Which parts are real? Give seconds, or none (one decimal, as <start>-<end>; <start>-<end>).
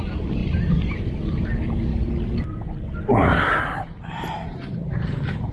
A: 0.0-5.5